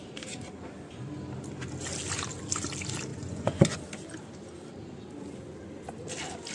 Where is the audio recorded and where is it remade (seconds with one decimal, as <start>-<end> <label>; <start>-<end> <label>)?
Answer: 0.0-3.1 recorded; 3.1-3.8 remade; 3.8-6.5 recorded